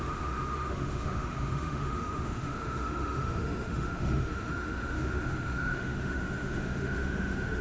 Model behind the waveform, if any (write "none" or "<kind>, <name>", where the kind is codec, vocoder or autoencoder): autoencoder, DAC-VAE